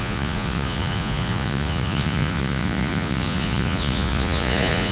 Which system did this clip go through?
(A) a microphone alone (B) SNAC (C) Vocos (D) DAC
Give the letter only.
C